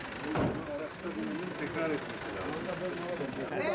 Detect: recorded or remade recorded